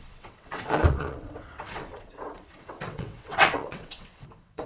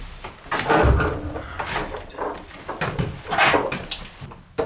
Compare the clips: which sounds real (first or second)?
second